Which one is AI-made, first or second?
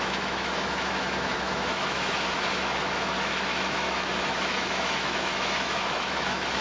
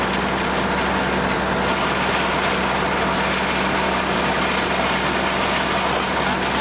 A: first